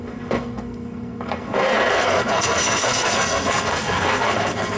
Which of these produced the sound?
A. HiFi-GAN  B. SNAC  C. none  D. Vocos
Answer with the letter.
B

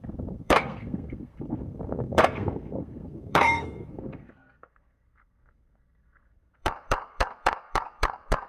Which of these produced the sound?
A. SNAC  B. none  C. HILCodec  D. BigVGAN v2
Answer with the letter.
A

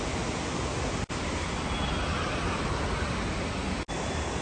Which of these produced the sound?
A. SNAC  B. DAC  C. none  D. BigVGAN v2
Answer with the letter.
C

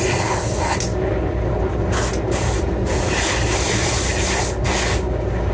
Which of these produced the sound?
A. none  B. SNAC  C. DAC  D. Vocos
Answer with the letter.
A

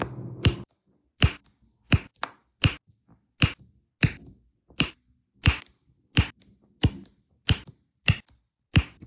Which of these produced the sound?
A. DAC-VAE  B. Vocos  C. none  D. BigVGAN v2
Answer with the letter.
C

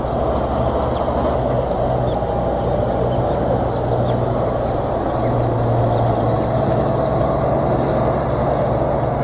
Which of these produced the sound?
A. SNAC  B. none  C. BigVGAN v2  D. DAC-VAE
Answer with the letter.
B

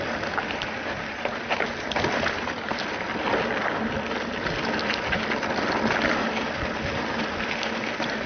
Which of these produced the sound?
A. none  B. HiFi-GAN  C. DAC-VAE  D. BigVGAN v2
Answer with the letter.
A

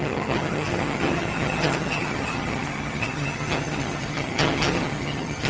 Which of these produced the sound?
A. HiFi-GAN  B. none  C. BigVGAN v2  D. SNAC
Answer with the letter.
A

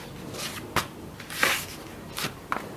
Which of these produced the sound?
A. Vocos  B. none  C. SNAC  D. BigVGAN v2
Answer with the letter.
D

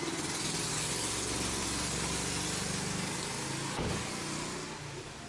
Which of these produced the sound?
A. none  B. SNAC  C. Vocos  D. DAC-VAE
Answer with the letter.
A